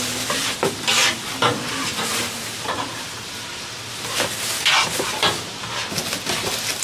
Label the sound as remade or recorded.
recorded